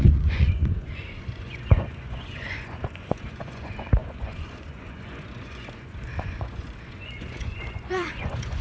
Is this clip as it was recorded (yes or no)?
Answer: no